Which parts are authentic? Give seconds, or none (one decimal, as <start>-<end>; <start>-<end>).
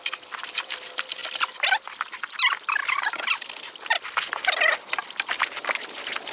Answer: 0.0-6.3